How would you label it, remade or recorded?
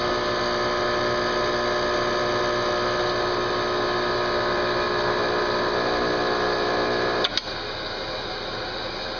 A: recorded